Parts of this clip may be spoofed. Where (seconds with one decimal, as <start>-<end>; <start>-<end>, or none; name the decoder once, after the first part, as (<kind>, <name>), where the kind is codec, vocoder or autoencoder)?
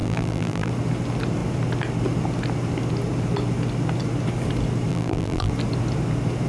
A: 0.0-0.7 (vocoder, BigVGAN v2); 4.9-5.5